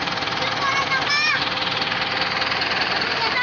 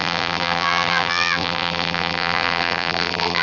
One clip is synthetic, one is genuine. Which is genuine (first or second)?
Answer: first